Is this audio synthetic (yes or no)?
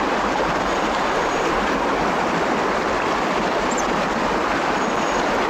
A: no